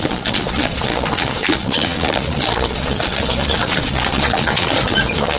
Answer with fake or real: fake